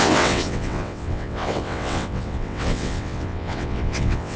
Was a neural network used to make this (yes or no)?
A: yes